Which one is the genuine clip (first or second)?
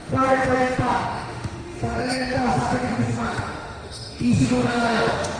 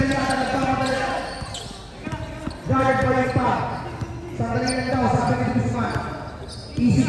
second